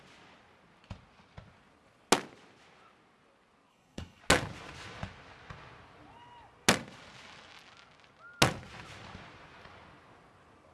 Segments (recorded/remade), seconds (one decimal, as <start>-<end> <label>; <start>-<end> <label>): 0.0-3.7 recorded; 3.7-4.2 remade; 4.2-10.7 recorded

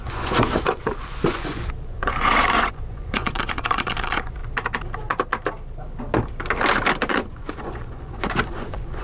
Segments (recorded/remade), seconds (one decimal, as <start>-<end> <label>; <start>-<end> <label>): 0.0-4.4 remade; 4.4-7.1 recorded; 7.1-9.0 remade